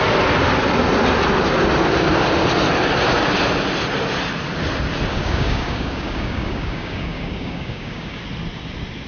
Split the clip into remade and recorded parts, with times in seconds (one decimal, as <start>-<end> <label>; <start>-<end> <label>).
0.0-5.1 recorded; 5.1-8.2 remade; 8.2-9.1 recorded